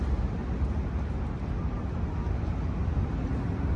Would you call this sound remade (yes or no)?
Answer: no